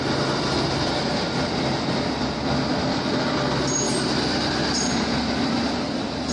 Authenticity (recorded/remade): recorded